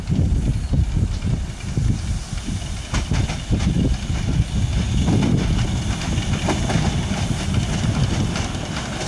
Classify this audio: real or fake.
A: real